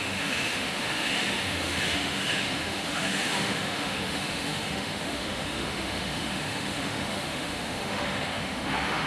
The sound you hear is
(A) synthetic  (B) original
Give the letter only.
A